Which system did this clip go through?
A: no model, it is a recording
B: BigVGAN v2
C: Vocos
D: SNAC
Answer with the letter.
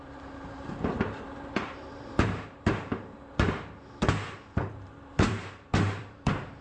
B